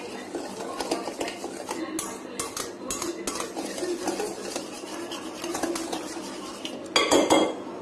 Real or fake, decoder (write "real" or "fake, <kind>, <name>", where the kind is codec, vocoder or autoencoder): real